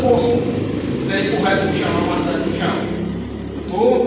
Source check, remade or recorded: recorded